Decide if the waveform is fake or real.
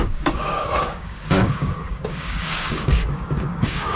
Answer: fake